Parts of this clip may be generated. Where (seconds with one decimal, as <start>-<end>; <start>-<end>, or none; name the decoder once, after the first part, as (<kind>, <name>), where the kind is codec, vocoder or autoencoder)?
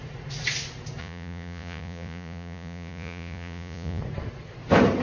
1.0-4.0 (vocoder, Vocos)